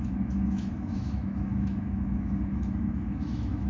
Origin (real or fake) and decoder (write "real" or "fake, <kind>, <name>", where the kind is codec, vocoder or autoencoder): fake, autoencoder, DAC-VAE